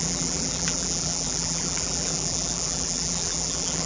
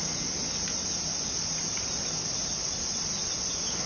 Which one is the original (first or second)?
second